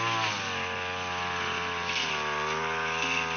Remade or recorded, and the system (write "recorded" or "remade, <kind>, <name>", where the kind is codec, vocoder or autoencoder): recorded